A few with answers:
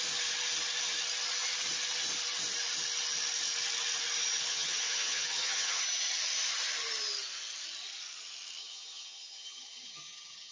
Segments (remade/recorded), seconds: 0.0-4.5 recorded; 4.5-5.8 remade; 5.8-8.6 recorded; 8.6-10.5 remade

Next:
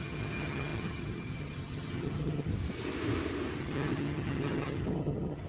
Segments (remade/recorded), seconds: 0.0-2.5 remade; 2.5-3.6 recorded; 3.6-5.5 remade

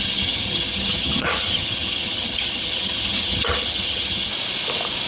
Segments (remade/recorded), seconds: 0.0-4.3 remade; 4.3-5.1 recorded

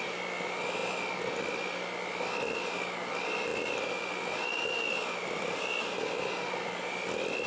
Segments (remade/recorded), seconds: 0.0-7.5 recorded

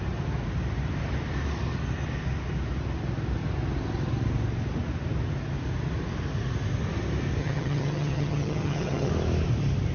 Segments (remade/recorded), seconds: 0.0-7.4 recorded; 7.4-9.1 remade; 9.1-9.9 recorded

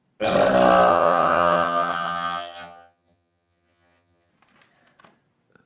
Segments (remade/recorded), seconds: 0.0-0.9 recorded; 0.9-4.3 remade; 4.3-5.7 recorded